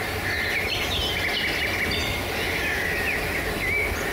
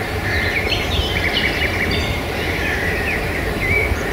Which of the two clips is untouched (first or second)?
first